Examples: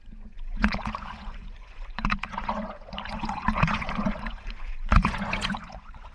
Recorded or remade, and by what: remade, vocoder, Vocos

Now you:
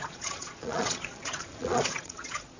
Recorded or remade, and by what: remade, vocoder, Vocos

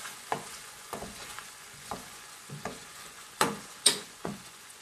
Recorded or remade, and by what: remade, vocoder, Vocos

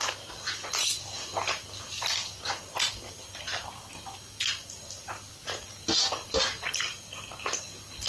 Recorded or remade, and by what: recorded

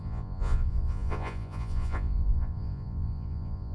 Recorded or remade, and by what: remade, vocoder, Vocos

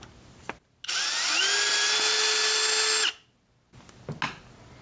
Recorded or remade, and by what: recorded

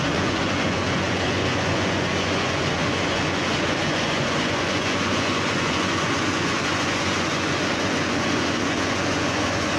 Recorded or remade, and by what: remade, vocoder, Vocos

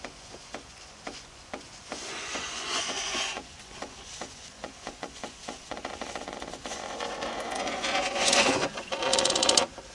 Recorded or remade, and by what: remade, vocoder, Vocos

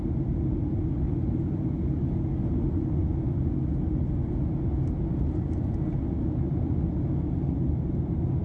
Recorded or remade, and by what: recorded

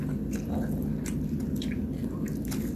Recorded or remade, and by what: recorded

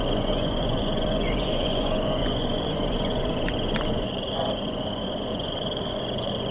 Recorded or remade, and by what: remade, vocoder, Vocos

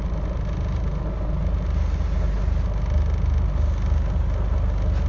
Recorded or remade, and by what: recorded